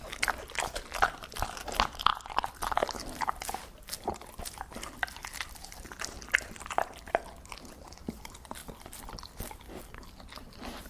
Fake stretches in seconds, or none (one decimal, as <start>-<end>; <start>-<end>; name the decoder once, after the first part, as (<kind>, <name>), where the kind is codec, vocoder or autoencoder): none